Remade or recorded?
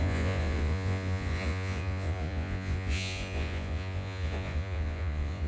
remade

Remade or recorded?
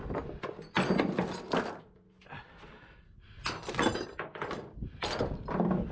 recorded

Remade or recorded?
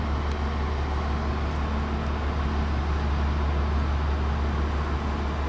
recorded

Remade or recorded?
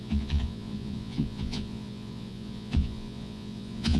remade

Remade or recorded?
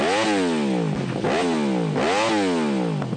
recorded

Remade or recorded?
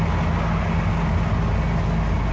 recorded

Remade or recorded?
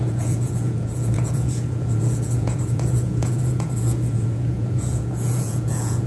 remade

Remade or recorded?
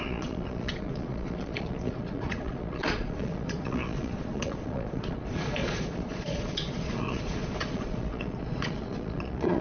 remade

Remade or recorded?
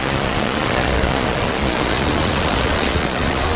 remade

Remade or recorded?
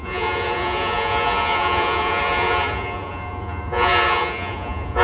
remade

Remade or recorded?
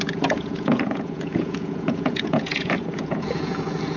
remade